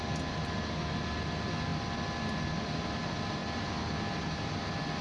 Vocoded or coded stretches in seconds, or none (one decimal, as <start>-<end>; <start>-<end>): none